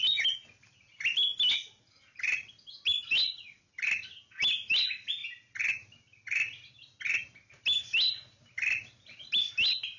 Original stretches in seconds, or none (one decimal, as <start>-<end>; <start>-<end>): 0.0-10.0

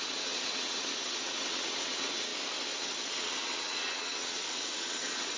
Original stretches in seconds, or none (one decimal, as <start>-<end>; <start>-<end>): 2.3-2.8